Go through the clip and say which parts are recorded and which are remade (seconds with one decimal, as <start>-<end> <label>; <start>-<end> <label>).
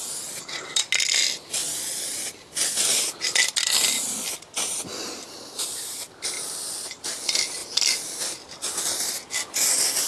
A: 0.0-1.6 recorded; 1.6-3.9 remade; 3.9-4.9 recorded; 4.9-6.3 remade; 6.3-7.6 recorded; 7.6-8.8 remade; 8.8-10.1 recorded